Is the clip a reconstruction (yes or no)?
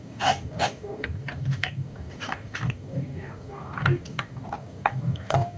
yes